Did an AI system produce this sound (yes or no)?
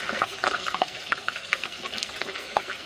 yes